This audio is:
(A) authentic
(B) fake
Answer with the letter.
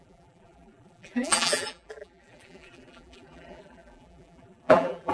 B